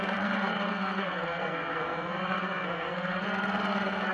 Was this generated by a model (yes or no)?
yes